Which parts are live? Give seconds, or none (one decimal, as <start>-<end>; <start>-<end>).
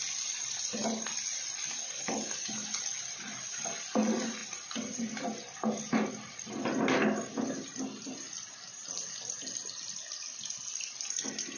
0.0-11.6